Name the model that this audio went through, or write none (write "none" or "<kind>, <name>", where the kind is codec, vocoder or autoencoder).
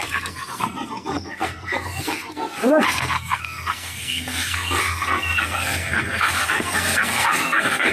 codec, SNAC